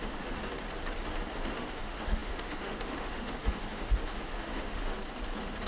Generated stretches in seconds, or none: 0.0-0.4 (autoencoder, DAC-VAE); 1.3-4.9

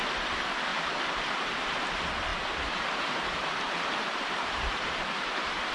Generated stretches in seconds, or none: 0.7-1.9 (vocoder, BigVGAN v2); 2.3-5.7

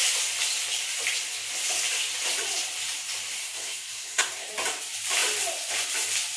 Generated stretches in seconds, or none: 3.4-4.5 (codec, SNAC)

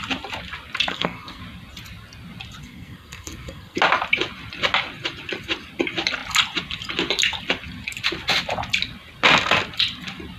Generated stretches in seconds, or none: 0.9-1.4 (codec, SNAC); 2.6-3.8